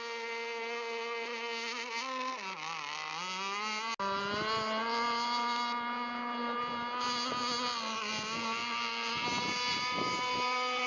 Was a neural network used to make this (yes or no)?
no